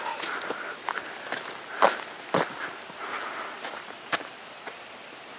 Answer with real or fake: real